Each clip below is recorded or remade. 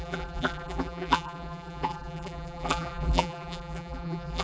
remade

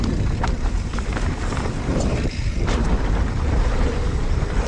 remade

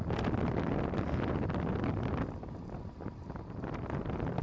recorded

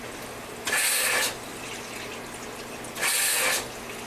recorded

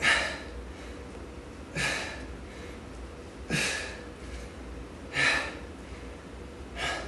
recorded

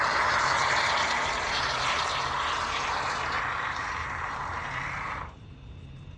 remade